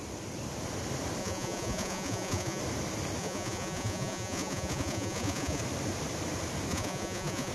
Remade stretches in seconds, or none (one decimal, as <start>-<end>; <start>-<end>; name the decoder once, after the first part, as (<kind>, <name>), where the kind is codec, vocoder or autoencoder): 1.2-2.6 (vocoder, Vocos); 3.2-5.6; 6.7-7.5